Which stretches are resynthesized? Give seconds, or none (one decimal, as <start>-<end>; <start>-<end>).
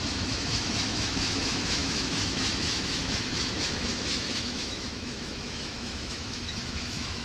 0.0-7.2